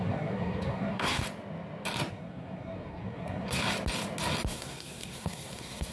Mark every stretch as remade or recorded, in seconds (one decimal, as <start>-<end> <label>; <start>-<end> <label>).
0.0-1.2 remade; 1.2-2.1 recorded; 2.1-3.6 remade; 3.6-4.5 recorded; 4.5-5.9 remade